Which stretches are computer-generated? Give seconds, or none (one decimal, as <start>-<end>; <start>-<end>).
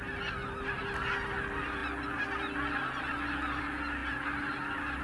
none